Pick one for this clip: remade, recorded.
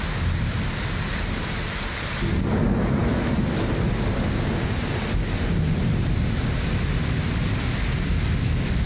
recorded